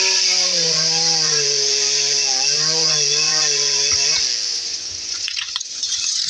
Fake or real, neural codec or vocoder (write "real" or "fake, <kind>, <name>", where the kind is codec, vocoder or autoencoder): fake, vocoder, Vocos